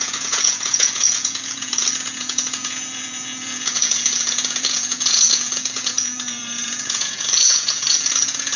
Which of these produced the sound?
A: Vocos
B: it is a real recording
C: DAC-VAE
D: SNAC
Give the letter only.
A